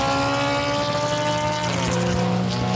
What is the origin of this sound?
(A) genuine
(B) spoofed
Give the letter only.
A